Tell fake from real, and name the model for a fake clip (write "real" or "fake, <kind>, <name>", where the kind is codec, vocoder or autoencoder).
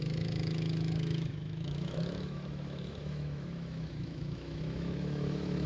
fake, autoencoder, DAC-VAE